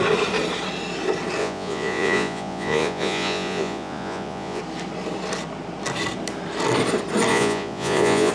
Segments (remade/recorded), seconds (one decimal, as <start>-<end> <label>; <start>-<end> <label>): 0.0-1.4 recorded; 1.4-4.6 remade; 4.6-7.3 recorded; 7.3-8.3 remade